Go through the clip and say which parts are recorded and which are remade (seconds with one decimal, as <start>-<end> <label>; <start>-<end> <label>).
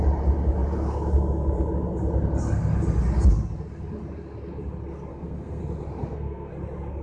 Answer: 0.0-5.1 recorded; 5.1-5.6 remade; 5.6-6.0 recorded; 6.0-6.5 remade; 6.5-7.0 recorded